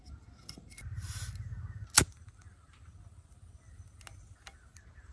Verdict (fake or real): real